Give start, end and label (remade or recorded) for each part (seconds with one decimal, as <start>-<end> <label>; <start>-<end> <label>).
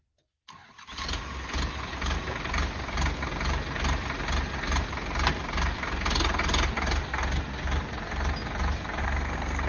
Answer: 0.0-9.0 recorded; 9.0-9.7 remade